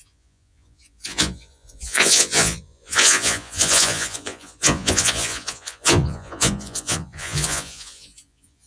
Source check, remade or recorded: remade